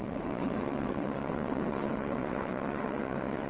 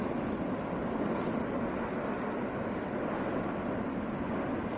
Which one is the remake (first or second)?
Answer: first